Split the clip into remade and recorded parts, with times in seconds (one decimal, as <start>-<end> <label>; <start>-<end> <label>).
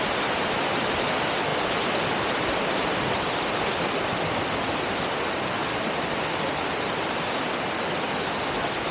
0.0-8.9 recorded